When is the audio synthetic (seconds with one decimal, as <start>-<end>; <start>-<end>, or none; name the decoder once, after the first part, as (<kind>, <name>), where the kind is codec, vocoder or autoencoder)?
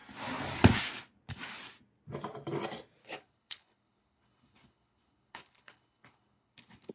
3.0-6.9 (codec, HILCodec)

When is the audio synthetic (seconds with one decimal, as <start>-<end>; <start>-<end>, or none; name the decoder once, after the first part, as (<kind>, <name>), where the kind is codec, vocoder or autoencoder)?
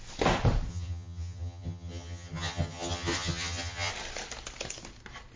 0.7-3.9 (vocoder, HiFi-GAN)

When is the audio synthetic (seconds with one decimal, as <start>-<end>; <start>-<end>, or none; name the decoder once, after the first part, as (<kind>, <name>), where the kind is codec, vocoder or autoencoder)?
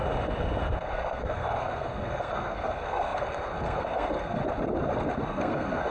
0.6-4.4 (codec, SNAC); 5.2-5.9